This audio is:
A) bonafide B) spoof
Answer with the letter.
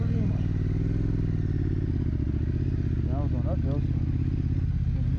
A